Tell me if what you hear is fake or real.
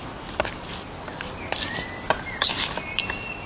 real